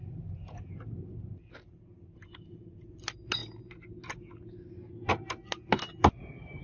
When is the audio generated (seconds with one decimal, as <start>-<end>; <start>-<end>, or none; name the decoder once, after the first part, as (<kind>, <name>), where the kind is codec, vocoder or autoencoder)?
none